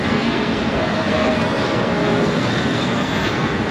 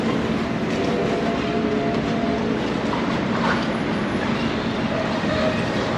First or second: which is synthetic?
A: first